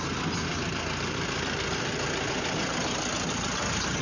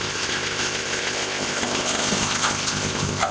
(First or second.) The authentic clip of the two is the first